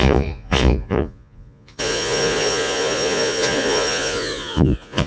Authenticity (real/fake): fake